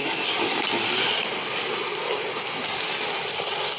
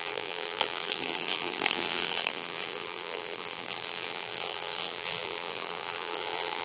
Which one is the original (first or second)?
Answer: first